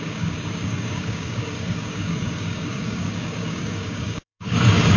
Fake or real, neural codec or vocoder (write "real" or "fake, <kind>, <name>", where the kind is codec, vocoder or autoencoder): fake, codec, DAC